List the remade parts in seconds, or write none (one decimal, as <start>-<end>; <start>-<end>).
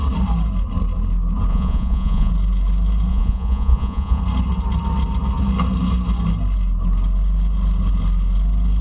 1.5-2.3; 3.1-4.2